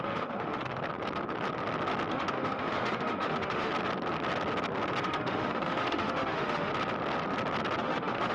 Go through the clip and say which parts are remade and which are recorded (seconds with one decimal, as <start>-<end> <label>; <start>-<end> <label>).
0.0-0.8 remade; 0.8-2.1 recorded; 2.1-3.7 remade; 3.7-5.0 recorded; 5.0-6.7 remade; 6.7-7.8 recorded; 7.8-8.3 remade